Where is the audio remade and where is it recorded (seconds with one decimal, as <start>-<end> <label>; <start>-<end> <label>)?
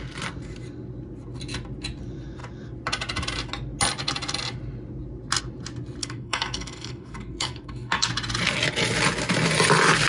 0.0-6.0 recorded; 6.0-8.1 remade; 8.1-10.1 recorded